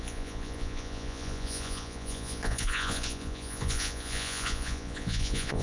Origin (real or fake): fake